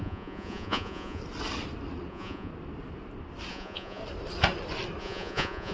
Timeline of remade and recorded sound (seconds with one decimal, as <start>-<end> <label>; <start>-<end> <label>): 0.0-1.2 remade; 1.2-2.1 recorded; 2.1-2.5 remade; 2.5-3.5 recorded; 3.5-4.0 remade; 4.0-5.0 recorded; 5.0-5.7 remade